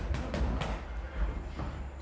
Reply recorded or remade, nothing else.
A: recorded